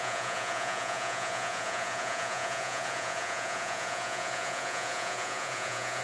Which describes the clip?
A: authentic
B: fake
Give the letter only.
B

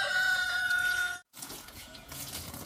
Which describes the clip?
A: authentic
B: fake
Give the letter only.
B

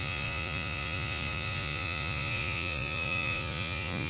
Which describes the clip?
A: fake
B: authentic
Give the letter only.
A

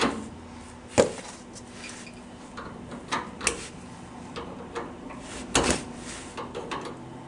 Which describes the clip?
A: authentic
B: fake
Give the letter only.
A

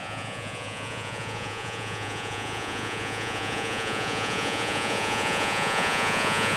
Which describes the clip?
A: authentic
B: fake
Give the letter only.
B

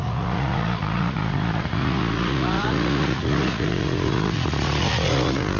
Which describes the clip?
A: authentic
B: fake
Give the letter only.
B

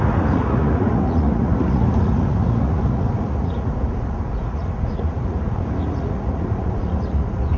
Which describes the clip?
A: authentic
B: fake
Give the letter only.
B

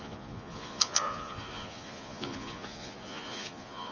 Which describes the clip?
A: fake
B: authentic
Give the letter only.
A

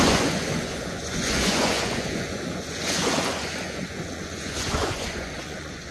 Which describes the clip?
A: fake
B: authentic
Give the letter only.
A